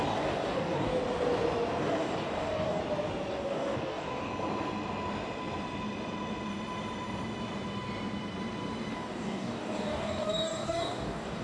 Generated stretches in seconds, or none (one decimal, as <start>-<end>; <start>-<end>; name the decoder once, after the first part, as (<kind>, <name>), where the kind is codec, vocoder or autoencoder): 0.0-0.9 (codec, DAC); 1.8-2.8; 3.3-4.3; 8.9-11.4